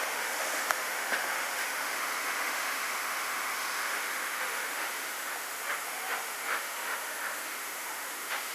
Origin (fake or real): fake